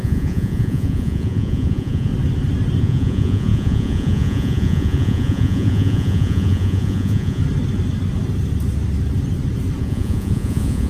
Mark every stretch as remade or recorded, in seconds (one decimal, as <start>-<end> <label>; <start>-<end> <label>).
0.0-2.1 remade; 2.1-2.8 recorded; 2.8-7.4 remade; 7.4-9.8 recorded; 9.8-10.9 remade